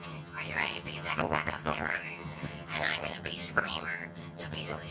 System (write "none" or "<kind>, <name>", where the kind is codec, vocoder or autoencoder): vocoder, HiFi-GAN